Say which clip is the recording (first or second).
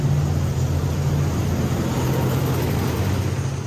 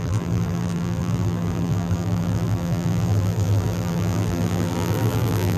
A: first